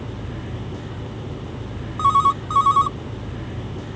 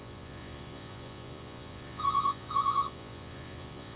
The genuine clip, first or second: first